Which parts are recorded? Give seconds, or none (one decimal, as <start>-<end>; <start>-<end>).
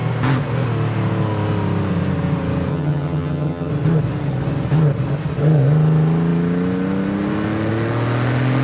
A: 0.0-2.7; 3.7-8.6